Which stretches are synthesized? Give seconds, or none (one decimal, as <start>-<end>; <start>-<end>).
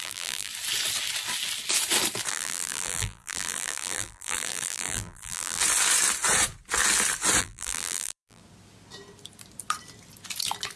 0.0-0.5; 2.3-5.6; 7.4-8.4